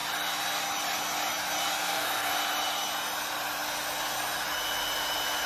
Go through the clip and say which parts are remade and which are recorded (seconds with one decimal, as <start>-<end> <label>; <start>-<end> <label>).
0.0-1.8 recorded; 1.8-2.3 remade; 2.3-5.5 recorded